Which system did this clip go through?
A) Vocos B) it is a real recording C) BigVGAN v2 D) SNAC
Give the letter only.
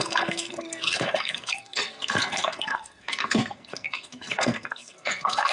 D